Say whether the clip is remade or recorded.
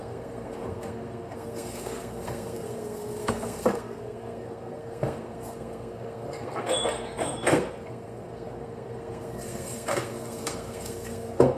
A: remade